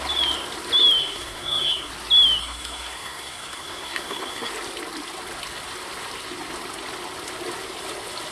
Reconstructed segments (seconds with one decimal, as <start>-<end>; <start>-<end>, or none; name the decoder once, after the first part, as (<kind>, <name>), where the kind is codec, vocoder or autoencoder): 1.0-1.9 (codec, SNAC); 2.4-4.5